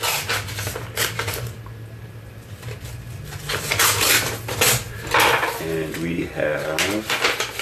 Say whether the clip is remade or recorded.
recorded